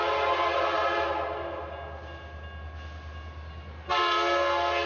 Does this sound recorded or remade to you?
recorded